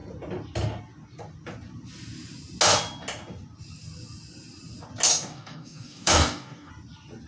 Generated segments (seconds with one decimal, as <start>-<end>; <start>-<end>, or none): 5.1-6.7